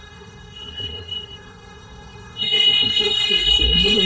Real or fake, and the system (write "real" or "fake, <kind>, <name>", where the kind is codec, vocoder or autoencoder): fake, codec, SNAC